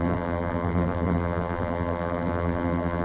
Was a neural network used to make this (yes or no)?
yes